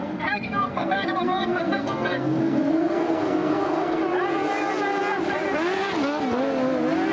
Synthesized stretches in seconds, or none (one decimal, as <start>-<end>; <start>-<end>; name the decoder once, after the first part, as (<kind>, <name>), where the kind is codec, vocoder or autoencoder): 0.0-4.0 (codec, SNAC)